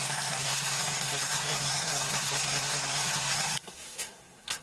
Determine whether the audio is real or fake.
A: fake